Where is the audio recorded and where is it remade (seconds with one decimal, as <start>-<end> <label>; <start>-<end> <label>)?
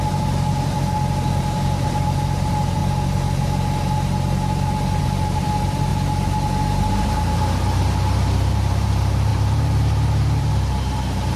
0.0-2.8 remade; 2.8-5.0 recorded; 5.0-5.9 remade; 5.9-6.9 recorded; 6.9-11.4 remade